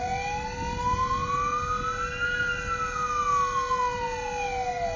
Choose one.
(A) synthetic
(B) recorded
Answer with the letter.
B